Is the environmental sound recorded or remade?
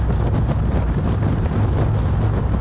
recorded